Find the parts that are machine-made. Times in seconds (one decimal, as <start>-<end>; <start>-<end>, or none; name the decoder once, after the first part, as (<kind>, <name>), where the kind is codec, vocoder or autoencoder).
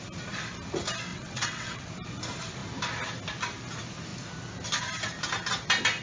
1.1-1.9 (vocoder, WaveNeXt)